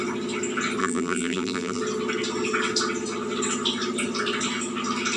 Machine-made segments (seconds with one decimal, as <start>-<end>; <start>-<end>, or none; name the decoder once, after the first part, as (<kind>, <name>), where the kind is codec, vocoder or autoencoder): 0.8-1.8 (vocoder, BigVGAN v2)